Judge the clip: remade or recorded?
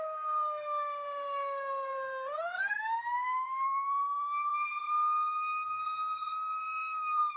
remade